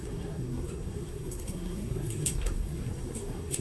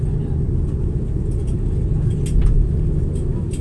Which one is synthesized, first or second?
first